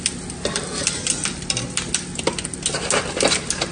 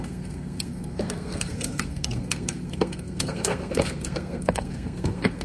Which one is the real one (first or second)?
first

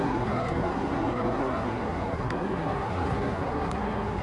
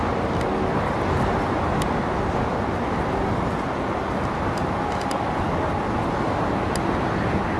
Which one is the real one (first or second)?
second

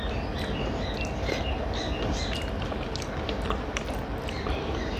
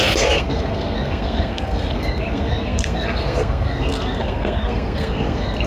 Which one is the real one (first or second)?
first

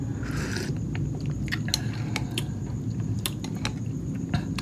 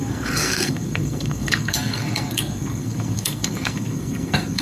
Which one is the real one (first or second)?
first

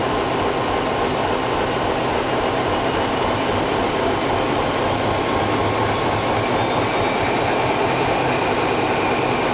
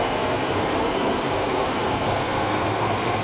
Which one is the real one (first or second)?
first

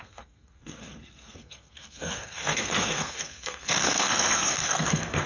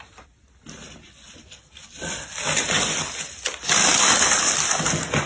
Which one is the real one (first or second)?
second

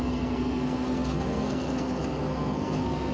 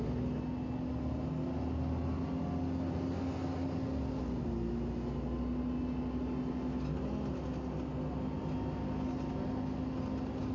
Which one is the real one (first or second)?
second